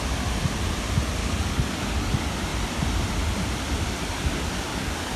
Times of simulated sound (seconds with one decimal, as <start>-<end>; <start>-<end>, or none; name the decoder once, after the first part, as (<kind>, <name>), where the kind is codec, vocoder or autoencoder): 1.2-2.1 (codec, DAC); 4.7-5.2